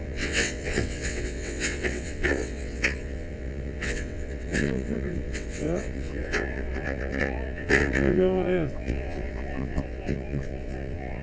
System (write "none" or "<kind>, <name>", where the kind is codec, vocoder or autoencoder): vocoder, WaveNeXt